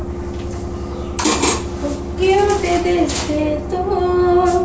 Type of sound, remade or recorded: recorded